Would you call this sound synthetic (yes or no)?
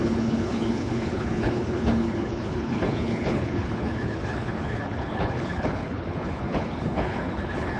yes